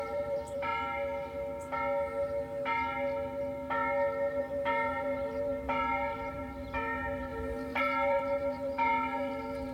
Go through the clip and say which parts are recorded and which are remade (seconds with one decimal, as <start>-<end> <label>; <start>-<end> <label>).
0.0-0.7 remade; 0.7-4.4 recorded; 4.4-9.7 remade